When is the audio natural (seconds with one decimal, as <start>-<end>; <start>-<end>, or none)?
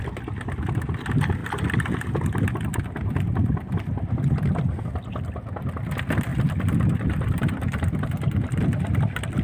0.0-6.3; 8.9-9.4